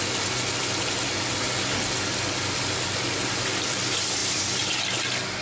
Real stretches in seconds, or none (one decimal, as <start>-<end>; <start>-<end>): 0.0-5.4